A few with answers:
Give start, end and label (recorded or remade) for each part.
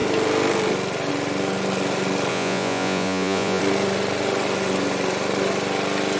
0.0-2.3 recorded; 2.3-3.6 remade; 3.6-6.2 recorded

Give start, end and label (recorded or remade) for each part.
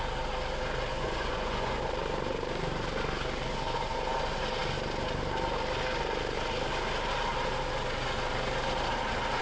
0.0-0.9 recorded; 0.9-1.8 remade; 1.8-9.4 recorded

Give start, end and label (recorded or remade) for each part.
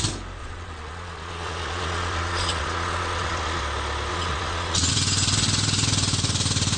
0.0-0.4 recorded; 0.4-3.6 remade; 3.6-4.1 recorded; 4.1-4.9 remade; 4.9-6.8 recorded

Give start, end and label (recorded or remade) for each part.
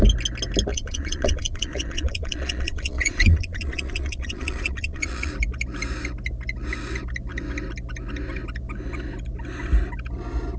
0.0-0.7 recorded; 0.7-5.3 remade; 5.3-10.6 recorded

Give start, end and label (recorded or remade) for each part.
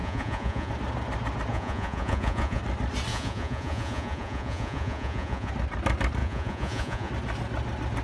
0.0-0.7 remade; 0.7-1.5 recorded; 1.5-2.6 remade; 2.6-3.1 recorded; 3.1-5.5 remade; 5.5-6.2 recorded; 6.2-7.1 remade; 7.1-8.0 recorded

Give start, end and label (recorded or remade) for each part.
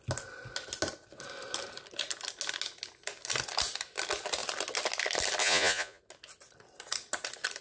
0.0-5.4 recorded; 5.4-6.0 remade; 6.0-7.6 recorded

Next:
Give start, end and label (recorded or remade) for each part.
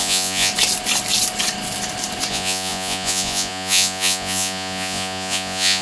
0.0-0.5 remade; 0.5-2.3 recorded; 2.3-5.8 remade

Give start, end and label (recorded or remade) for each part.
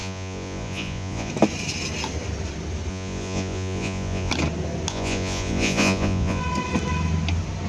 0.0-1.3 remade; 1.3-2.9 recorded; 2.9-4.3 remade; 4.3-4.9 recorded; 4.9-6.4 remade; 6.4-7.7 recorded